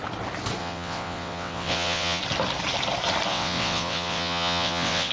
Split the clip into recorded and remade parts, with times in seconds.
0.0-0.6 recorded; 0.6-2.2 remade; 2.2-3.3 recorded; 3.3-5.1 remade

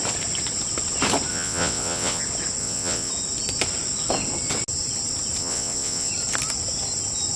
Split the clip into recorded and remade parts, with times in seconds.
0.0-1.3 recorded; 1.3-2.2 remade; 2.2-2.6 recorded; 2.6-3.1 remade; 3.1-5.4 recorded; 5.4-6.1 remade; 6.1-7.4 recorded